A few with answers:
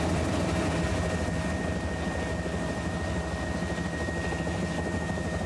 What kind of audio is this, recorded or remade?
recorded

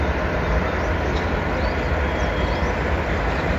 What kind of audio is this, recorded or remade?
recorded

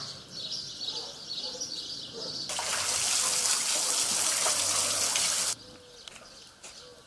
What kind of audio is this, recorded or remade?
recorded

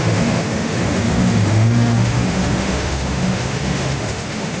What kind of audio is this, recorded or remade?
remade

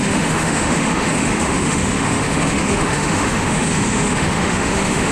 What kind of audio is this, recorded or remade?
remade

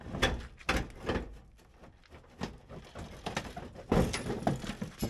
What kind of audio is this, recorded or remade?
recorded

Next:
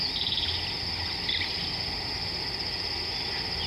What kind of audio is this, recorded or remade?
recorded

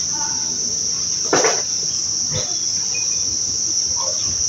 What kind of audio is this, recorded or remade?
recorded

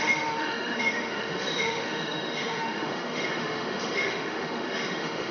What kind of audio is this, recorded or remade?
remade